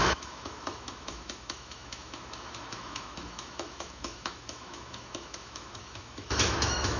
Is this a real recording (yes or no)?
no